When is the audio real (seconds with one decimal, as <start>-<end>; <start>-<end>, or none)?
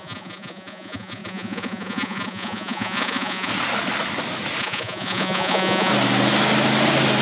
3.5-4.6; 5.9-7.2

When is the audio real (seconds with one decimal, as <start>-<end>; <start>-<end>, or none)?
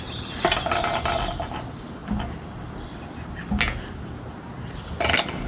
0.0-5.5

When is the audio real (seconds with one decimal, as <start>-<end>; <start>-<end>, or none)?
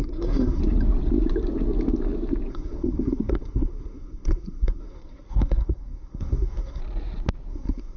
0.6-2.5; 6.8-7.5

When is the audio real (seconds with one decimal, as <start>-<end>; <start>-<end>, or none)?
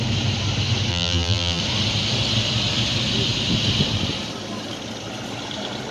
0.0-0.9; 1.6-5.9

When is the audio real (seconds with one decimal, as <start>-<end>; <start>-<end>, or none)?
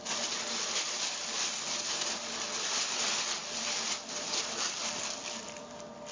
0.0-6.1